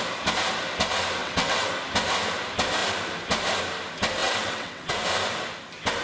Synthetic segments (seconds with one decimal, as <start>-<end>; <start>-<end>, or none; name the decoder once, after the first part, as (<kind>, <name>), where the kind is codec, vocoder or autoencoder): 1.2-1.7 (vocoder, WaveNeXt); 4.2-4.9